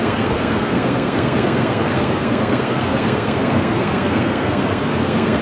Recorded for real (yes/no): no